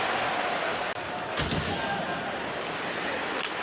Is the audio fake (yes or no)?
no